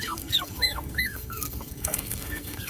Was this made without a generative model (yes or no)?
no